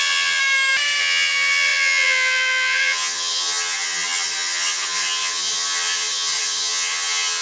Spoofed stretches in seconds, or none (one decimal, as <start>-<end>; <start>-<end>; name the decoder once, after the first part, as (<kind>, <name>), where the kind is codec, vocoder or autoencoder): 0.0-0.4 (vocoder, HiFi-GAN); 1.0-7.4